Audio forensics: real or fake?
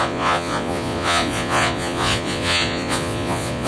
fake